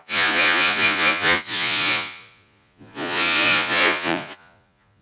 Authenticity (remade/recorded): remade